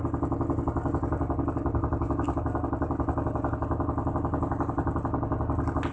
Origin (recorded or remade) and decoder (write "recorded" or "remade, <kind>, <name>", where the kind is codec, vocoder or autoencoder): recorded